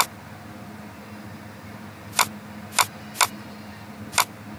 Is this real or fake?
real